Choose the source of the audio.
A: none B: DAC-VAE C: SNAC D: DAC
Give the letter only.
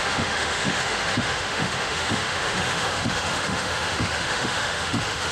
B